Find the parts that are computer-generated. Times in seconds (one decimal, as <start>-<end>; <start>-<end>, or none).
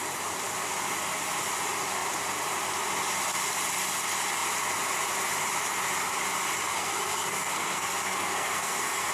6.7-9.1